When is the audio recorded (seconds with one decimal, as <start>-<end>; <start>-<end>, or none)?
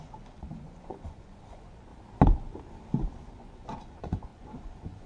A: 1.9-3.3